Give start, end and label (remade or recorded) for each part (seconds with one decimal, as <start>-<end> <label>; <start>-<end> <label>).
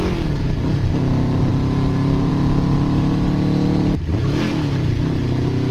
0.0-5.7 recorded